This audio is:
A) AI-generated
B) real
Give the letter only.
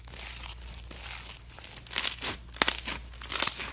B